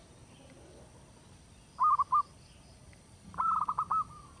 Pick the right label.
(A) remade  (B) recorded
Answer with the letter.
B